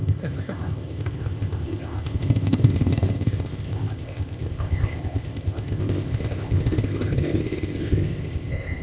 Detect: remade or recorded remade